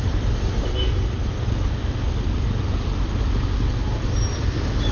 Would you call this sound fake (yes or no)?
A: no